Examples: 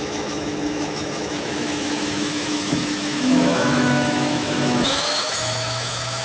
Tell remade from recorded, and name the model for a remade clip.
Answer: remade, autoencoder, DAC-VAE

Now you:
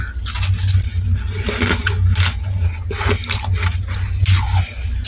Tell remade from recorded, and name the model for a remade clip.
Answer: recorded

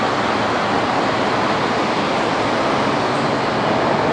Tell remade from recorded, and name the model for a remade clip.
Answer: recorded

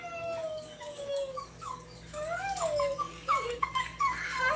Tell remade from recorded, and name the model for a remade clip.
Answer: remade, codec, DAC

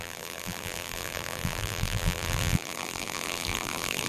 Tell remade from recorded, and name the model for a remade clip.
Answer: remade, vocoder, BigVGAN v2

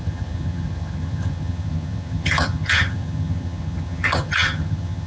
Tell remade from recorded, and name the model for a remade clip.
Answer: remade, vocoder, HiFi-GAN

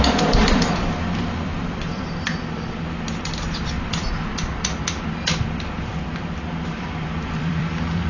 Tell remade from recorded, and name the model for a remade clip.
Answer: remade, vocoder, BigVGAN v2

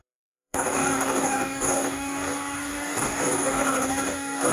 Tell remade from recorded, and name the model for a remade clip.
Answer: remade, codec, DAC